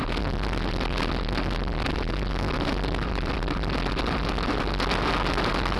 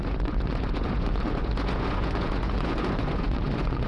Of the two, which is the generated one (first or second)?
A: second